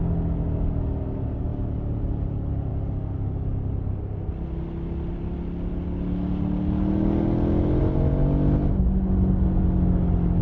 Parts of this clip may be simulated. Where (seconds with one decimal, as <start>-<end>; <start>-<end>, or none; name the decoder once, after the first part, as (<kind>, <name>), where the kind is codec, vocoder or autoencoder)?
none